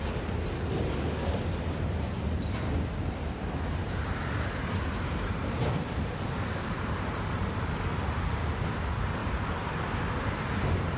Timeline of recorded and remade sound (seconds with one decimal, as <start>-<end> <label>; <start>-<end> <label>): 0.0-3.8 recorded; 3.8-7.4 remade; 7.4-11.0 recorded